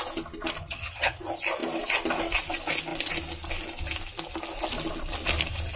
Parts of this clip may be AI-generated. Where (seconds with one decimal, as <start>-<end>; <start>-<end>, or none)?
0.6-1.2